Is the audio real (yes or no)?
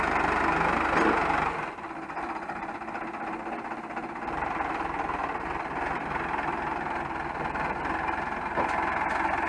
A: yes